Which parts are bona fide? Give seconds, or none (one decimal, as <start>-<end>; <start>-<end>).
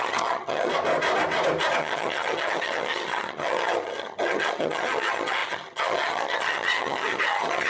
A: 0.7-1.8